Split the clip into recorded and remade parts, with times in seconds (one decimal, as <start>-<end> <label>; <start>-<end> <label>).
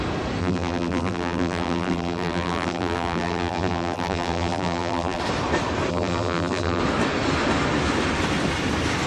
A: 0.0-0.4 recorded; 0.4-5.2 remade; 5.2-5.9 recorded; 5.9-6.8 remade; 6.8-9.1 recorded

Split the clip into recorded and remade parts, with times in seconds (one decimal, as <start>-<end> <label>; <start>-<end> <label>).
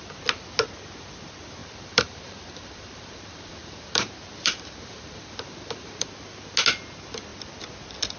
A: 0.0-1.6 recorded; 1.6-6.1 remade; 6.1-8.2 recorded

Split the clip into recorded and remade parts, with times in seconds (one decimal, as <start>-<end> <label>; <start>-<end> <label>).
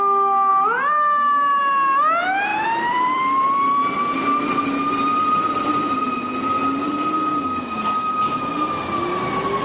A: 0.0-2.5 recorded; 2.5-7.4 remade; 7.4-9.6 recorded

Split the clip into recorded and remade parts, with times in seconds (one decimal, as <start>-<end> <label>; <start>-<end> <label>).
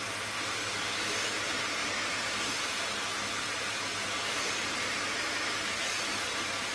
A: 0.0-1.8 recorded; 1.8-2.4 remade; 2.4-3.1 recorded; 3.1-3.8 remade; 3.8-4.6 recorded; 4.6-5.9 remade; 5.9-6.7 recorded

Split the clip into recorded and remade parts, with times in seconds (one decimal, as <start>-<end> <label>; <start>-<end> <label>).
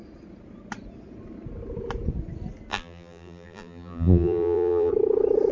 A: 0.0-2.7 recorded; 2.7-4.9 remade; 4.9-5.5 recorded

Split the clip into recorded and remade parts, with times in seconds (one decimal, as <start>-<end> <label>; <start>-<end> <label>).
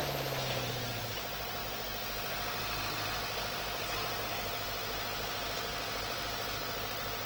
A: 0.0-5.7 recorded; 5.7-6.5 remade; 6.5-7.3 recorded